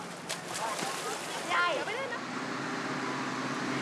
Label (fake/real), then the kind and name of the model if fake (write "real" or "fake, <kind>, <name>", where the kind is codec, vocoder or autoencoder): real